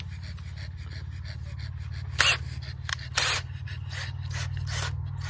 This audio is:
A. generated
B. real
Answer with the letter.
B